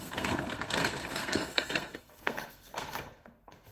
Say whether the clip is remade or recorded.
remade